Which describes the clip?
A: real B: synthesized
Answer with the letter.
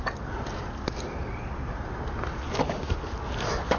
A